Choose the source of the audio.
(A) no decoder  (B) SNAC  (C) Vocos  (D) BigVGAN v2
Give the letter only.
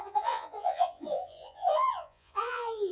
C